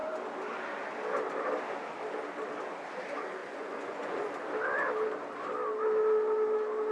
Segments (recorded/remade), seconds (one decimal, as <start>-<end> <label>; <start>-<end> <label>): 0.0-3.4 recorded; 3.4-4.3 remade; 4.3-6.9 recorded

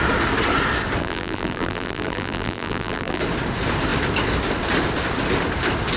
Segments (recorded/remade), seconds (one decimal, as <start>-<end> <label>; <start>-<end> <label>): 0.0-1.0 recorded; 1.0-3.2 remade; 3.2-6.0 recorded

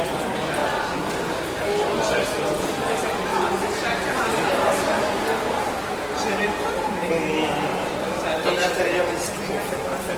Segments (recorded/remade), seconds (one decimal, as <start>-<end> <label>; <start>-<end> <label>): 0.0-10.2 recorded